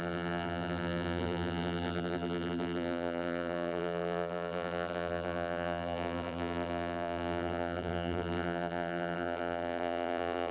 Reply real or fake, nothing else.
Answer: fake